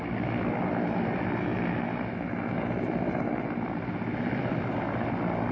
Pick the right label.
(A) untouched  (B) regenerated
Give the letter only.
A